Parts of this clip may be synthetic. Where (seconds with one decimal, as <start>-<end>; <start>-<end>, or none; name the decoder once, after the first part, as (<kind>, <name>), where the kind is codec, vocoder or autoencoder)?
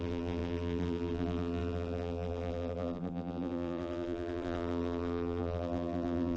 0.0-6.4 (vocoder, BigVGAN v2)